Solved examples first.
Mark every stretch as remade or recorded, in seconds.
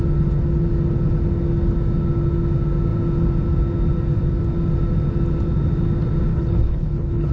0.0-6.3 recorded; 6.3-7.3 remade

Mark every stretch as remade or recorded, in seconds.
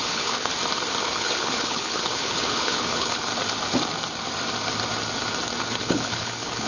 0.0-0.5 remade; 0.5-1.0 recorded; 1.0-3.3 remade; 3.3-5.8 recorded; 5.8-6.7 remade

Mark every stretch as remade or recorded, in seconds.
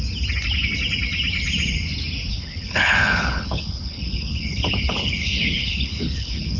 0.0-2.3 recorded; 2.3-6.6 remade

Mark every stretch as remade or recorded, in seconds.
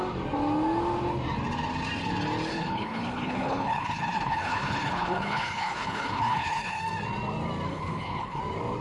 0.0-2.5 recorded; 2.5-6.8 remade; 6.8-7.7 recorded; 7.7-8.4 remade; 8.4-8.8 recorded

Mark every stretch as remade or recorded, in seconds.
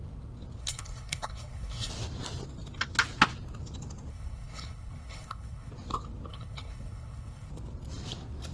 0.0-0.6 recorded; 0.6-1.9 remade; 1.9-4.1 recorded; 4.1-5.7 remade; 5.7-6.3 recorded; 6.3-7.5 remade; 7.5-8.5 recorded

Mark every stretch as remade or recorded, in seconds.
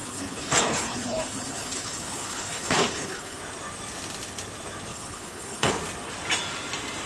0.0-3.4 remade; 3.4-4.9 recorded; 4.9-5.7 remade; 5.7-7.1 recorded